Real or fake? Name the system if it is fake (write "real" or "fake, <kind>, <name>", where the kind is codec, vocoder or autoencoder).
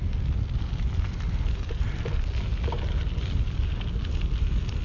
real